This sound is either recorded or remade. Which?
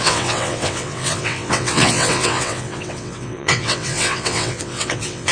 remade